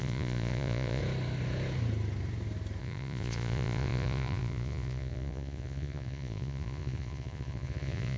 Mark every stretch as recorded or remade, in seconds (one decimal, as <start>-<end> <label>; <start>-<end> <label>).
0.0-1.0 remade; 1.0-2.8 recorded; 2.8-8.2 remade